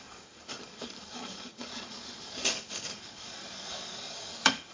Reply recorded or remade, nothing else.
remade